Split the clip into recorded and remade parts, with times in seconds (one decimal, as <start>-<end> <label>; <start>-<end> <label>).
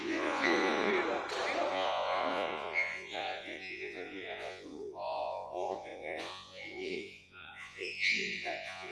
0.0-0.9 remade; 0.9-1.7 recorded; 1.7-8.9 remade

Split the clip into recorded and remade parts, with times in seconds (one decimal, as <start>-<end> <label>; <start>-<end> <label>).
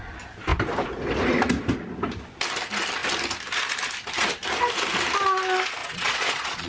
0.0-5.8 recorded; 5.8-6.7 remade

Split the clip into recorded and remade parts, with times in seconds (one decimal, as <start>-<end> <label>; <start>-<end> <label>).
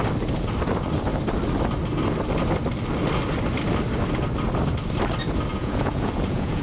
0.0-5.5 recorded; 5.5-6.6 remade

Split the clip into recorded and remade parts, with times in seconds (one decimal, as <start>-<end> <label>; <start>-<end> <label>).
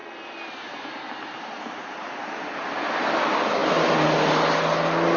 0.0-5.2 recorded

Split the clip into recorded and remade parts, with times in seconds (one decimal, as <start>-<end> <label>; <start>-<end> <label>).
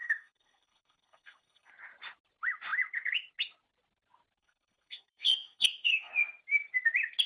0.0-1.7 remade; 1.7-4.4 recorded; 4.4-6.1 remade; 6.1-7.3 recorded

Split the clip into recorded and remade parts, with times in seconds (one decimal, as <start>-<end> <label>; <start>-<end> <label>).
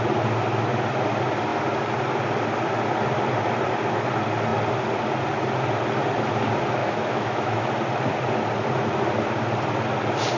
0.0-6.8 recorded; 6.8-7.7 remade; 7.7-10.4 recorded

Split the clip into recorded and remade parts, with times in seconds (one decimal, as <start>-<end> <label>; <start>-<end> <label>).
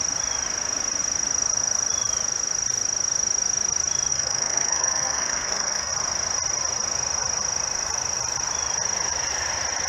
0.0-4.1 recorded; 4.1-5.9 remade; 5.9-9.9 recorded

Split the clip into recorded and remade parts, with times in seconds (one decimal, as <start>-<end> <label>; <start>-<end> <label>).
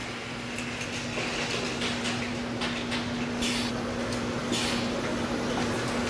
0.0-6.1 recorded